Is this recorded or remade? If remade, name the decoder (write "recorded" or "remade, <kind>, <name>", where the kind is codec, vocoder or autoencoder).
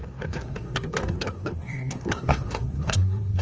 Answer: remade, codec, SNAC